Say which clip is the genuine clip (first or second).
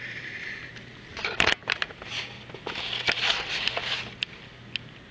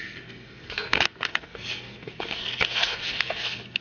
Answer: first